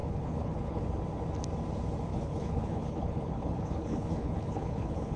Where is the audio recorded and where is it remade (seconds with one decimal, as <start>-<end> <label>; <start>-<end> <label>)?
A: 0.0-0.8 remade; 0.8-2.1 recorded; 2.1-5.2 remade